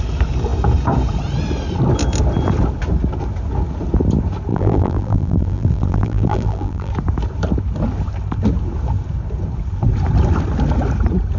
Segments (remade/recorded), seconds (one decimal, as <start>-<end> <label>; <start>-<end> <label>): 0.0-4.5 recorded; 4.5-6.9 remade; 6.9-11.4 recorded